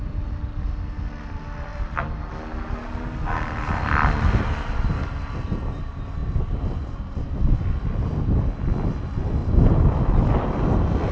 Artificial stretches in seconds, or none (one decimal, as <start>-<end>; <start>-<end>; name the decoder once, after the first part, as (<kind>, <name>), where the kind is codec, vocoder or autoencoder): 1.7-2.3 (vocoder, BigVGAN v2); 6.2-7.4; 9.4-11.1